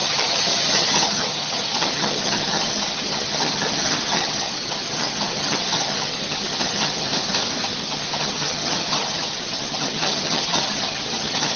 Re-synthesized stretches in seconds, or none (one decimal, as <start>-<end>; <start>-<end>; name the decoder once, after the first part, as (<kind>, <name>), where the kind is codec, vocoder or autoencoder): 0.0-7.1 (vocoder, HiFi-GAN); 7.7-11.6